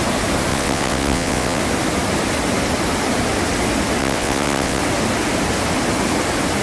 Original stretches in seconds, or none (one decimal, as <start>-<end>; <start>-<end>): 0.0-0.5; 1.6-4.0; 4.8-6.6